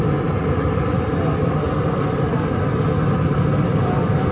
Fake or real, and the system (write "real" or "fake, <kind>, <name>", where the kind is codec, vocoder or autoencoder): real